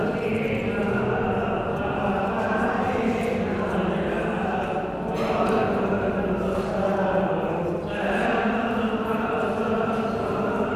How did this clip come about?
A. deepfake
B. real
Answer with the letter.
B